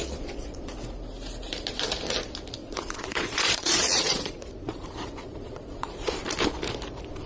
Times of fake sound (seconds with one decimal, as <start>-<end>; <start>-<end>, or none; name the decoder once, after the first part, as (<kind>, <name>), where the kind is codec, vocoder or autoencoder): 0.0-0.7 (vocoder, Vocos); 2.6-6.2